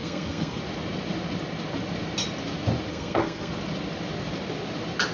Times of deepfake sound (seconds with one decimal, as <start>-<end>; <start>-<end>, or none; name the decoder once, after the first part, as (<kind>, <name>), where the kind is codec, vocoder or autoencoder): 0.0-0.6 (codec, SNAC); 2.9-3.5